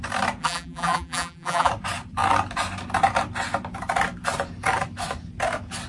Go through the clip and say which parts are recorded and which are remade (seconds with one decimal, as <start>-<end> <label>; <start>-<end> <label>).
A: 0.0-0.4 recorded; 0.4-1.7 remade; 1.7-5.9 recorded